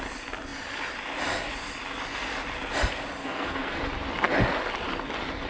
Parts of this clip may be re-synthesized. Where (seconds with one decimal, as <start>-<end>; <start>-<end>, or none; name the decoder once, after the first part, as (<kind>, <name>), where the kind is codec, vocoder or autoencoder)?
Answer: 3.2-3.8 (codec, SNAC)